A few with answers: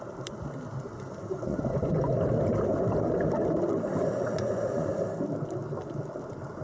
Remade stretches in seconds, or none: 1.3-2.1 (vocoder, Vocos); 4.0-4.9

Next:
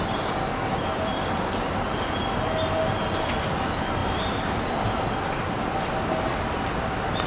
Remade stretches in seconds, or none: none